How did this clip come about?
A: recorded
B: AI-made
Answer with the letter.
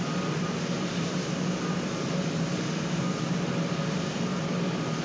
B